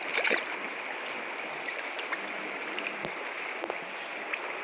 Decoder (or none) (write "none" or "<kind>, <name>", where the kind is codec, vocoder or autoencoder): none